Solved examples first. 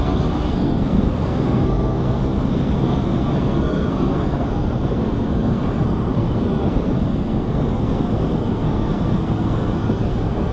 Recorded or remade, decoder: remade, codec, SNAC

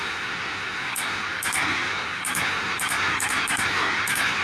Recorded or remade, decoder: remade, codec, SNAC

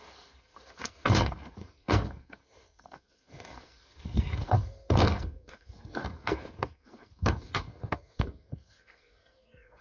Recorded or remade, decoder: remade, codec, SNAC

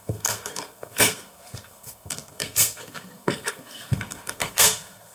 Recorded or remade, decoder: remade, codec, SNAC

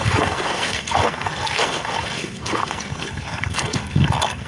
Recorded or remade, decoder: remade, codec, SNAC